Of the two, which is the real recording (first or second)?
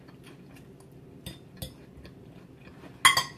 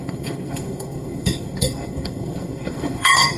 first